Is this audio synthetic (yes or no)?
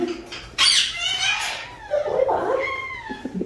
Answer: no